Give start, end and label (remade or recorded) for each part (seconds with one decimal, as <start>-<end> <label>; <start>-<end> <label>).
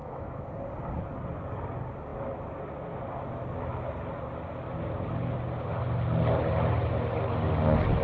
0.0-0.5 remade; 0.5-8.0 recorded